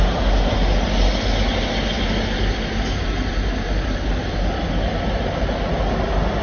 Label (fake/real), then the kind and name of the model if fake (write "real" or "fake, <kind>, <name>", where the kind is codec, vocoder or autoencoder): real